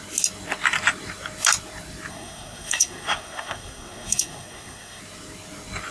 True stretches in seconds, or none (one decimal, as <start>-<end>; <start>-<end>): 0.0-2.1; 5.0-5.9